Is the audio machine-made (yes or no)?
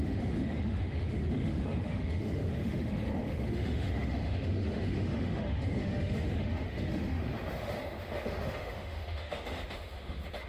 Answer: yes